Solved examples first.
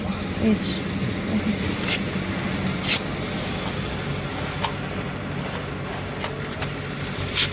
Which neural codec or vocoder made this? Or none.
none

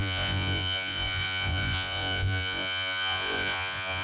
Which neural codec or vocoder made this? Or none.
vocoder, Vocos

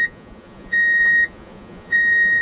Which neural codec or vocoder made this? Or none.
vocoder, Vocos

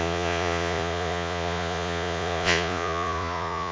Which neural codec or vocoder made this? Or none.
vocoder, Vocos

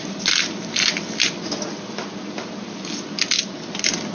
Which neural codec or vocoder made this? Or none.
none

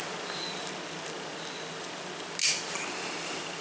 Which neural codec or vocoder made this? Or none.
none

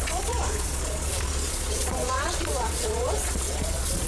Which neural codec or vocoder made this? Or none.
vocoder, Vocos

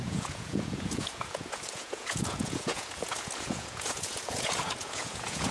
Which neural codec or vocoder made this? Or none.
vocoder, Vocos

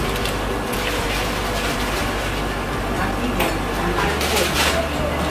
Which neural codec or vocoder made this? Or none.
none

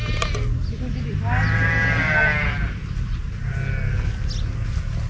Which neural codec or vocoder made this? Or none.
none